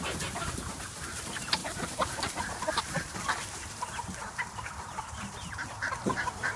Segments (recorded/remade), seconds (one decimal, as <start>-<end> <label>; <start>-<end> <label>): 0.0-6.6 remade